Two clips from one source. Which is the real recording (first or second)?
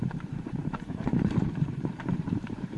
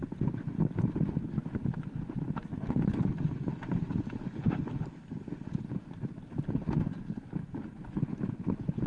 second